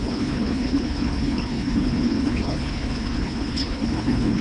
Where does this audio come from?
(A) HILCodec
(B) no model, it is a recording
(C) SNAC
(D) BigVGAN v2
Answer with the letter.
A